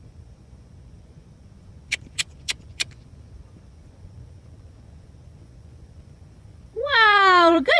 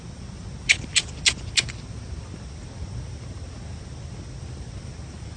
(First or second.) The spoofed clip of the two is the first